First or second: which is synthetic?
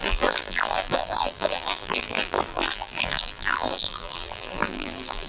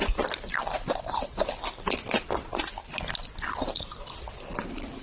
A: first